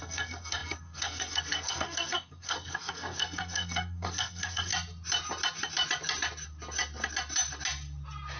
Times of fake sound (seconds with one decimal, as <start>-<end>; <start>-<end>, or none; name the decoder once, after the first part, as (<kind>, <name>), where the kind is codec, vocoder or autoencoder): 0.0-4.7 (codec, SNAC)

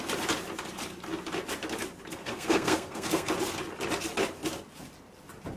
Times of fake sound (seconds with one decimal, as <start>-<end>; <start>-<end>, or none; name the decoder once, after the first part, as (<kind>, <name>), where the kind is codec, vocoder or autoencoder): 2.2-3.3 (codec, SNAC)

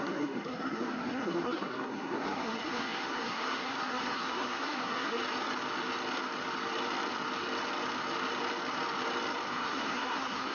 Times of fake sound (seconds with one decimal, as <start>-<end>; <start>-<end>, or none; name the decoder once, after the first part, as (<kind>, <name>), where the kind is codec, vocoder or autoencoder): 0.0-5.2 (codec, SNAC); 9.5-10.5